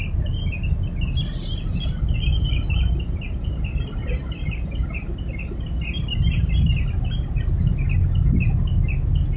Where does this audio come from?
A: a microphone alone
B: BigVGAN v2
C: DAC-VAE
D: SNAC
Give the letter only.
A